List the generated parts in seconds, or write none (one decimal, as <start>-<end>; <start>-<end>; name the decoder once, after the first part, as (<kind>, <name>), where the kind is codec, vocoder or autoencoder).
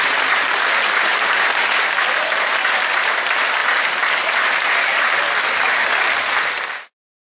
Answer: none